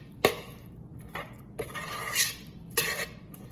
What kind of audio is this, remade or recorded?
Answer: remade